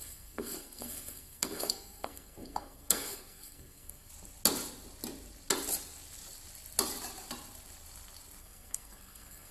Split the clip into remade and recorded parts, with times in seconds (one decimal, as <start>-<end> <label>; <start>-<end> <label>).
0.0-4.1 remade; 4.1-8.4 recorded; 8.4-9.5 remade

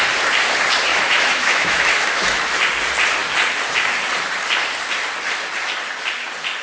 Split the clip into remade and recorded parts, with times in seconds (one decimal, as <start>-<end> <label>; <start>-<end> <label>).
0.0-0.9 recorded; 0.9-2.4 remade; 2.4-6.6 recorded

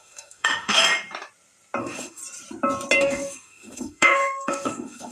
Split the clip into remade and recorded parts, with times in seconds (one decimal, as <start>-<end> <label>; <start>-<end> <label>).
0.0-0.8 remade; 0.8-1.8 recorded; 1.8-2.2 remade; 2.2-3.0 recorded; 3.0-5.1 remade